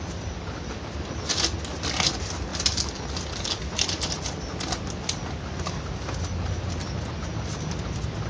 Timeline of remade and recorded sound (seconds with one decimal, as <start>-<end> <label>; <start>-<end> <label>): 0.0-8.3 recorded